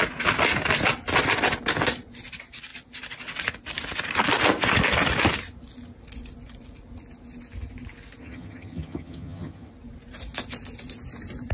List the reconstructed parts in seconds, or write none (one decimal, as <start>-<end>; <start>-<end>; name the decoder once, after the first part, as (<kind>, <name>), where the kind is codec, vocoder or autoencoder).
8.2-9.7 (vocoder, HiFi-GAN)